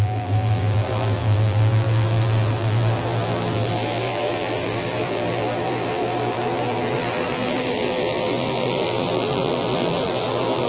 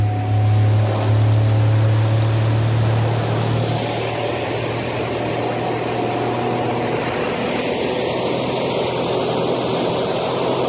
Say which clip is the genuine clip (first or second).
second